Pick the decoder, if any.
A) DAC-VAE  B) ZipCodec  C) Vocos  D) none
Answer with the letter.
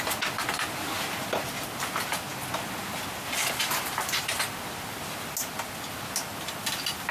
D